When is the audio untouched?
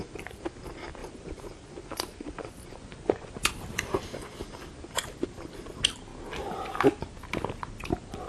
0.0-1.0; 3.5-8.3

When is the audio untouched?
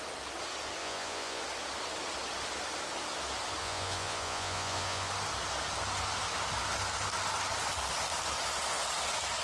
0.0-0.8; 1.4-3.6; 5.1-9.4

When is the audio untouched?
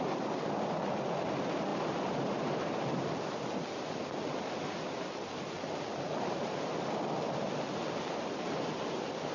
0.0-9.3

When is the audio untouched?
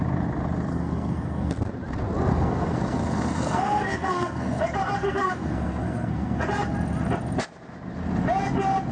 0.0-0.7; 1.6-2.3; 4.6-5.0; 6.4-8.9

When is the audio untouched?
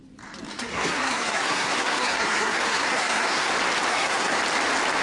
0.0-0.5; 3.5-3.9; 4.4-5.0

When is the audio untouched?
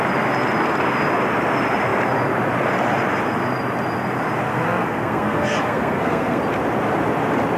0.0-4.5; 6.4-7.6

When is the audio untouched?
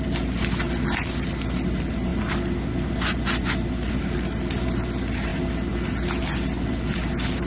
0.0-7.5